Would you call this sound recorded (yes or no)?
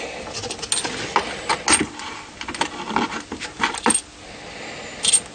yes